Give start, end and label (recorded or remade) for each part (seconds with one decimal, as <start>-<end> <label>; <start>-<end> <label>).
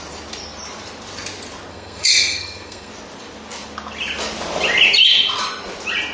0.0-1.7 recorded; 1.7-2.9 remade; 2.9-6.1 recorded